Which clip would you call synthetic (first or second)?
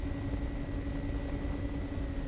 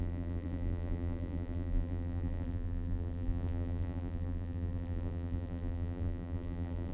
second